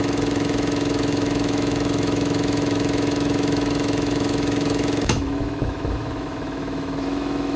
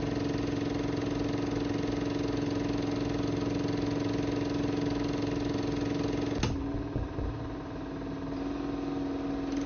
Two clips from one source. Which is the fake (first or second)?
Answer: first